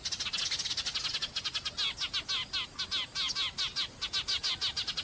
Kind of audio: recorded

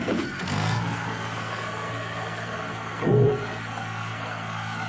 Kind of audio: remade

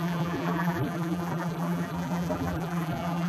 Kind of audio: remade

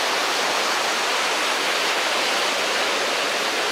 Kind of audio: recorded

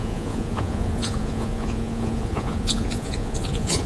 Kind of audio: remade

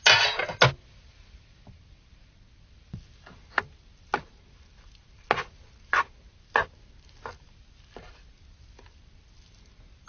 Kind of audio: recorded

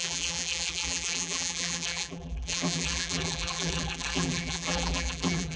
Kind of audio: remade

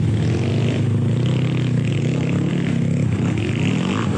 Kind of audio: recorded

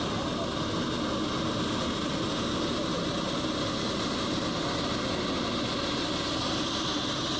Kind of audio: recorded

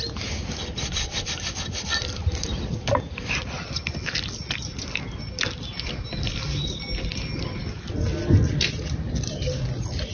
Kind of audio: recorded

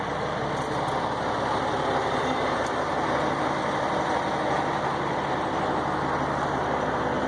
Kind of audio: recorded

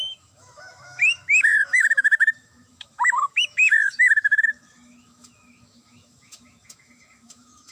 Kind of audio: remade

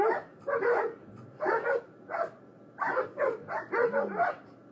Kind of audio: recorded